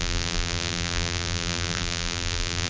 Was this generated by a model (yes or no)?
yes